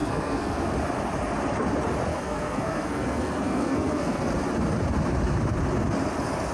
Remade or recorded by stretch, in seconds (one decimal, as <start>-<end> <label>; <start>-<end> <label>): 0.0-0.7 remade; 0.7-2.1 recorded; 2.1-4.3 remade; 4.3-6.5 recorded